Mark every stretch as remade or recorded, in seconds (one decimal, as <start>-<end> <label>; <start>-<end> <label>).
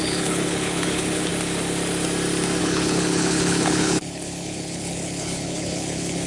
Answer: 0.0-1.3 remade; 1.3-2.6 recorded; 2.6-6.3 remade